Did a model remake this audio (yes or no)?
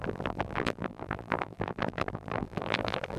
yes